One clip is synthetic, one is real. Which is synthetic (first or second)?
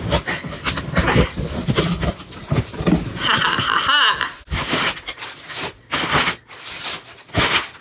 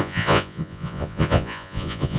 second